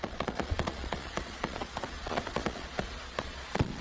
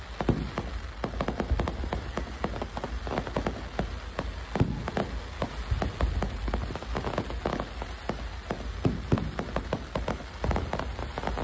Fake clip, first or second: first